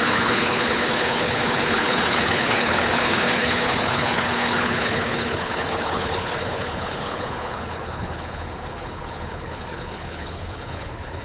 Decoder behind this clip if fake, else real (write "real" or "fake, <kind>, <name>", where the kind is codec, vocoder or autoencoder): fake, codec, HILCodec